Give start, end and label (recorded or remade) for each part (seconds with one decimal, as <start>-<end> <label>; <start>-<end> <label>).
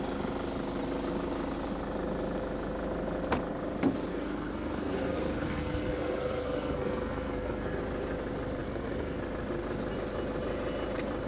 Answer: 0.0-4.1 recorded; 4.1-7.8 remade; 7.8-8.6 recorded; 8.6-9.2 remade; 9.2-11.3 recorded